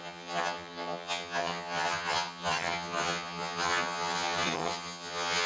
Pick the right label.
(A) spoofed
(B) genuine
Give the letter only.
A